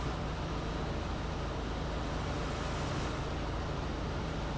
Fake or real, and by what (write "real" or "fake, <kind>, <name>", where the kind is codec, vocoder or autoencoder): real